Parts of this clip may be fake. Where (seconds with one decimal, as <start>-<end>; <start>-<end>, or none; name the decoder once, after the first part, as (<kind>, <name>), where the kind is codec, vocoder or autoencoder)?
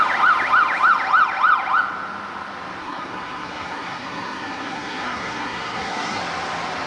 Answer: 2.8-6.2 (codec, SNAC)